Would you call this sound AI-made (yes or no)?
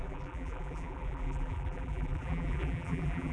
yes